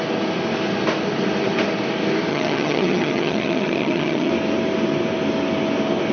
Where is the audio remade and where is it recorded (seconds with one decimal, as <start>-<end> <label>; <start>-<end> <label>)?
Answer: 0.0-2.3 recorded; 2.3-4.3 remade; 4.3-6.1 recorded